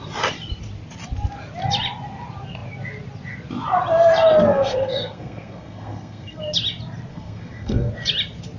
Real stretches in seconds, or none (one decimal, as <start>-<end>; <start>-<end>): 0.0-4.5; 6.4-7.1; 7.9-8.6